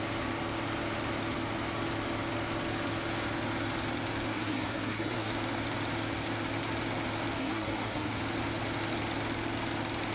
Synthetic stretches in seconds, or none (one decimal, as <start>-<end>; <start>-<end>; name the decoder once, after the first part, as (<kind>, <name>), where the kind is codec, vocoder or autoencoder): 4.3-5.3 (codec, SNAC); 7.4-8.2